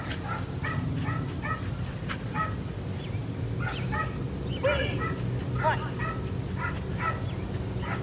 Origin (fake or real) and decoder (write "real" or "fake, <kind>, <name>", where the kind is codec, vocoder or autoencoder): real